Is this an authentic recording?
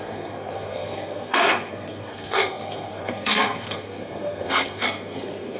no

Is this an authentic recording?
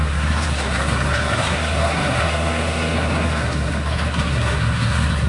no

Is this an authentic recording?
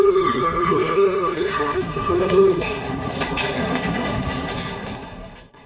no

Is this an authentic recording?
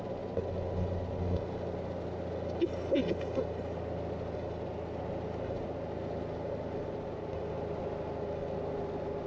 yes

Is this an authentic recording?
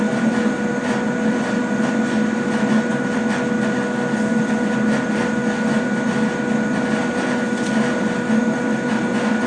yes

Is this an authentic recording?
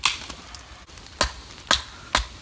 yes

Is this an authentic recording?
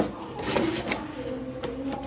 yes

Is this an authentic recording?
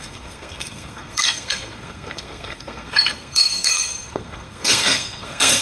no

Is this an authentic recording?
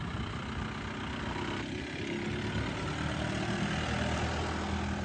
yes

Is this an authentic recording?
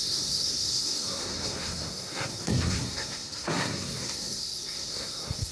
no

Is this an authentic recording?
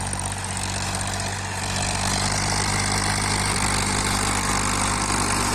yes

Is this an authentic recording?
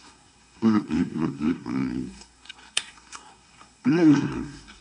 no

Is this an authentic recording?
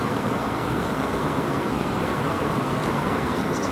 no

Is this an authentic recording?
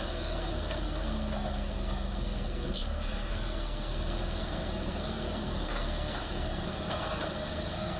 no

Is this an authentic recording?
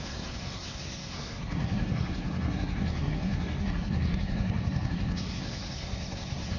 no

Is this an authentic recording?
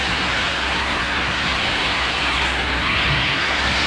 no